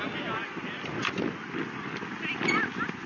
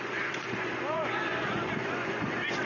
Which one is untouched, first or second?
first